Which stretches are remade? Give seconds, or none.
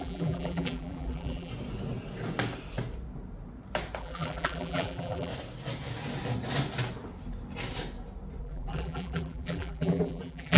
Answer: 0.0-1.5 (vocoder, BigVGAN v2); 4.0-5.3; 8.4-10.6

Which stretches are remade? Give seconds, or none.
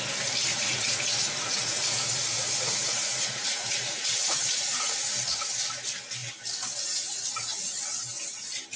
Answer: 0.5-5.1 (vocoder, Vocos)